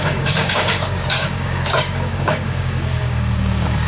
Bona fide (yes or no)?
no